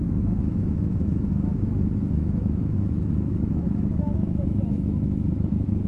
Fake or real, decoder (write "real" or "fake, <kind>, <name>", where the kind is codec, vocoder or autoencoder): fake, autoencoder, DAC-VAE